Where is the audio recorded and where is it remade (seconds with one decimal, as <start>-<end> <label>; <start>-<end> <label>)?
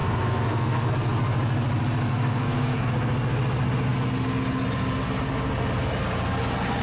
0.0-0.9 remade; 0.9-2.1 recorded; 2.1-2.9 remade; 2.9-6.8 recorded